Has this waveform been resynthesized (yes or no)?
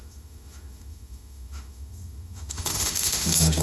yes